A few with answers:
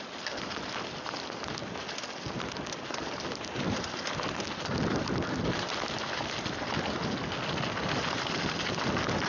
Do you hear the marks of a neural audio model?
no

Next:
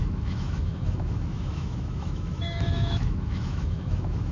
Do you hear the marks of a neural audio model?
yes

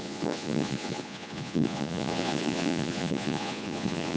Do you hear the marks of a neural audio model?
yes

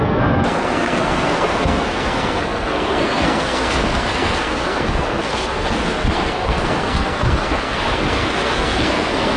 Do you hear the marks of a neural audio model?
yes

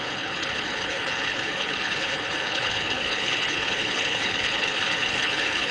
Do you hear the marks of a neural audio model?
yes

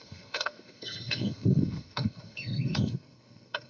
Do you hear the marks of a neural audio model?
yes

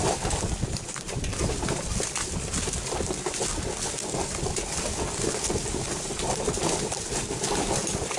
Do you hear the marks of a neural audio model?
yes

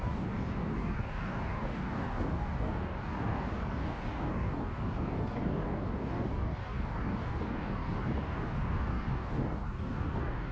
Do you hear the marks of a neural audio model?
yes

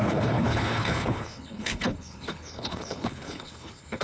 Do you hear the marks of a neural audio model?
yes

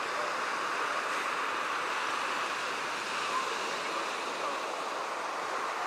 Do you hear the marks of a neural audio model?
no